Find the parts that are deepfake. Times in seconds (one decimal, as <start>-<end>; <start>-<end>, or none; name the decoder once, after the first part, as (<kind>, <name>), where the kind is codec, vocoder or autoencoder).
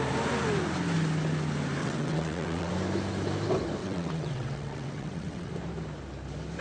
1.8-2.7 (vocoder, WaveNeXt); 3.8-5.5